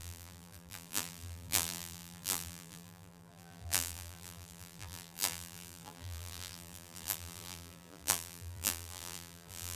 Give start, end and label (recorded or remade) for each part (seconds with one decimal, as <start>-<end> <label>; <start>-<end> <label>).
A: 0.0-9.8 remade